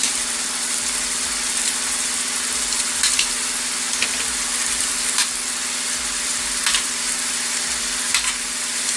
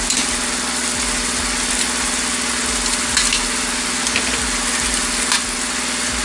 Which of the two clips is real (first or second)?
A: second